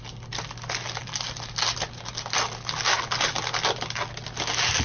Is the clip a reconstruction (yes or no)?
no